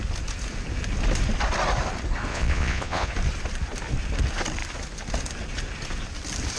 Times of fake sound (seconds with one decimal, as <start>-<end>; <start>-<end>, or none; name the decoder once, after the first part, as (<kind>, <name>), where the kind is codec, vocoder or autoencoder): 2.3-3.1 (vocoder, Vocos)